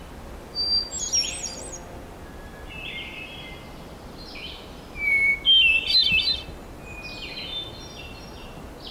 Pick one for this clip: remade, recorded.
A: recorded